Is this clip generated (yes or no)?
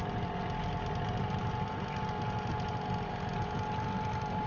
no